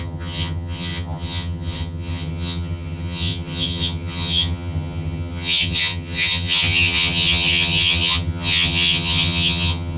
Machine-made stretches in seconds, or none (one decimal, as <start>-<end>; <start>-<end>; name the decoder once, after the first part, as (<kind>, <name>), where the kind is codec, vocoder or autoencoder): 0.0-10.0 (vocoder, HiFi-GAN)